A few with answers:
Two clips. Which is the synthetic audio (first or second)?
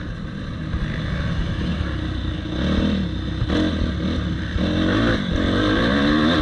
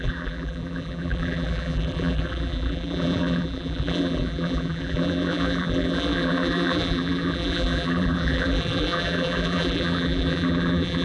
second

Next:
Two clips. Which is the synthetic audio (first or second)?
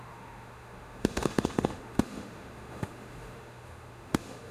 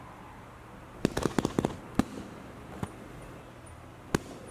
first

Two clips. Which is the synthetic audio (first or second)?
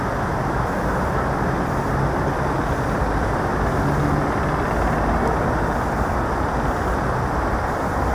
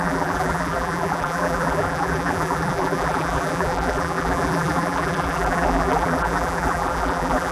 second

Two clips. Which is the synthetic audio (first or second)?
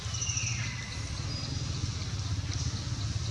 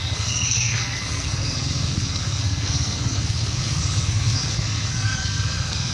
second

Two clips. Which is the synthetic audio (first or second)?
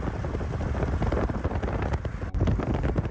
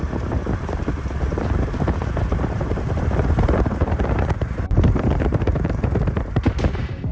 second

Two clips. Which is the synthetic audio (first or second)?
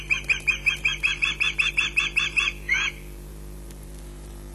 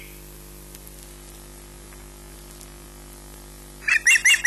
first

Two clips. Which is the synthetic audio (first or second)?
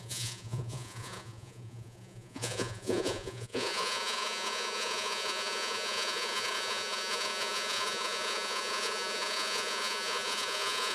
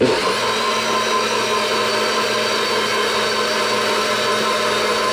first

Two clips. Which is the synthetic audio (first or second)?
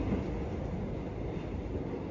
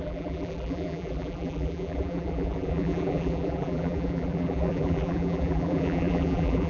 second